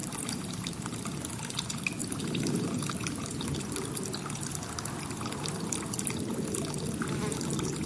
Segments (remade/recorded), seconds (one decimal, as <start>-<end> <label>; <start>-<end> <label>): 0.0-1.0 remade; 1.0-2.0 recorded; 2.0-3.4 remade; 3.4-7.9 recorded